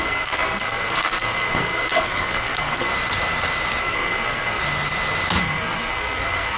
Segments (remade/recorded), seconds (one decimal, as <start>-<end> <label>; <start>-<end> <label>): 0.0-2.9 remade; 2.9-3.8 recorded; 3.8-4.6 remade; 4.6-5.4 recorded; 5.4-6.6 remade